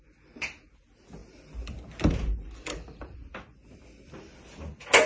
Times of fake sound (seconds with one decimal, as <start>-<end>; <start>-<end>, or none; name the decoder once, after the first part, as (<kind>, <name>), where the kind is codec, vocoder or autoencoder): none